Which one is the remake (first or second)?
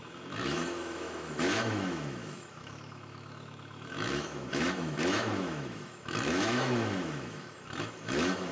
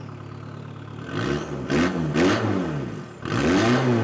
first